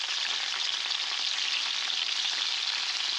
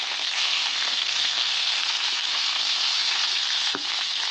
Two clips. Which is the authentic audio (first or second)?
first